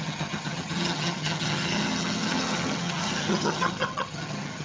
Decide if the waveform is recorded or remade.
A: remade